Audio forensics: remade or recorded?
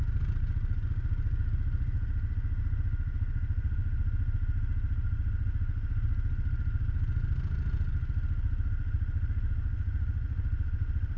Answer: recorded